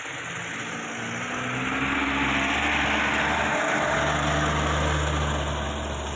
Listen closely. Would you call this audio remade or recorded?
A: recorded